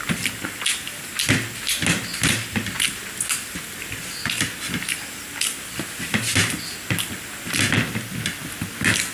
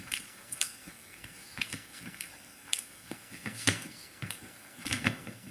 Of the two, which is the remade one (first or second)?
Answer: second